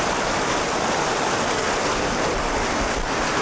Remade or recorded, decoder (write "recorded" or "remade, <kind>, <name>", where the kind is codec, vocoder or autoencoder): recorded